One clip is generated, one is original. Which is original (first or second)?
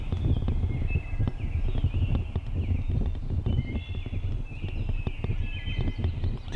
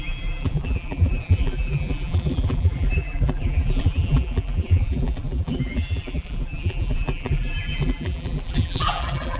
first